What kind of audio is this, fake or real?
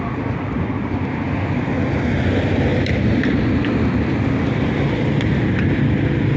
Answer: real